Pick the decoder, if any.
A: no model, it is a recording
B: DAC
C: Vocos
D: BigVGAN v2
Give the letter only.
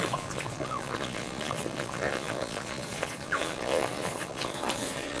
C